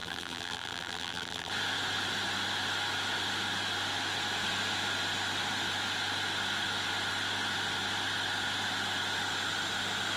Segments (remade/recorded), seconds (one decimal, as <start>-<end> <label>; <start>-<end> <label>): 0.0-1.5 remade; 1.5-10.2 recorded